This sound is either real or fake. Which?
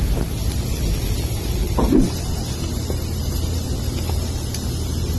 real